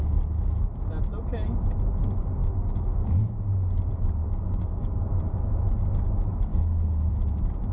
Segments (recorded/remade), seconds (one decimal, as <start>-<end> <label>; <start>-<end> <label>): 0.0-2.4 recorded; 2.4-3.2 remade; 3.2-4.2 recorded; 4.2-5.2 remade; 5.2-6.5 recorded; 6.5-7.1 remade; 7.1-7.7 recorded